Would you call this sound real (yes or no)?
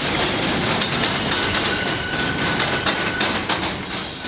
yes